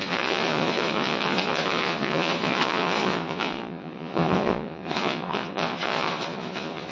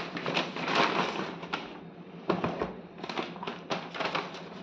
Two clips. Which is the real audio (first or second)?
second